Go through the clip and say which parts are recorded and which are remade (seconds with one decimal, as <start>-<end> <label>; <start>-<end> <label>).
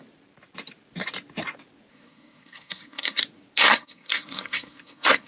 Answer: 0.0-1.9 recorded; 1.9-3.2 remade; 3.2-3.6 recorded; 3.6-5.3 remade